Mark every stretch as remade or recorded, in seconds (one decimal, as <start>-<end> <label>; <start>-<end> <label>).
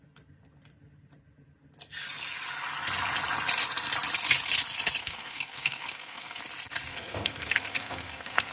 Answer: 0.0-5.0 recorded; 5.0-6.4 remade; 6.4-6.9 recorded; 6.9-8.5 remade